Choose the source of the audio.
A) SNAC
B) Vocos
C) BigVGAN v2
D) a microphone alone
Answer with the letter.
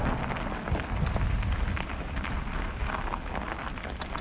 D